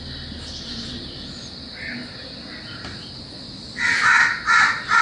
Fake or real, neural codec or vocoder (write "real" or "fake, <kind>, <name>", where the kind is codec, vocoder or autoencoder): real